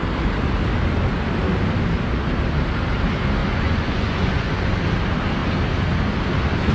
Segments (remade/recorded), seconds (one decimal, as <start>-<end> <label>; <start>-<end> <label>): 0.0-3.4 recorded; 3.4-4.7 remade; 4.7-6.7 recorded